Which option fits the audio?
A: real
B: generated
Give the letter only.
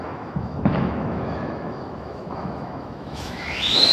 B